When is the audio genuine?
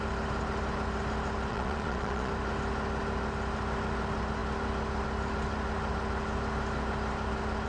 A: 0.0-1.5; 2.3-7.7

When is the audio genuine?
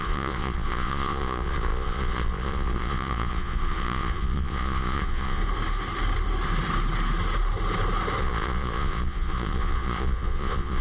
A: 5.4-8.2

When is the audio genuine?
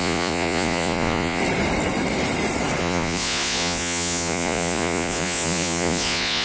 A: 1.4-2.8